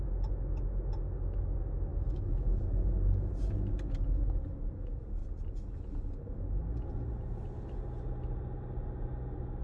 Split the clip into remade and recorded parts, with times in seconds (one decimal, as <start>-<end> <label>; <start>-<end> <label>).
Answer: 0.0-1.9 recorded; 1.9-2.6 remade; 2.6-9.6 recorded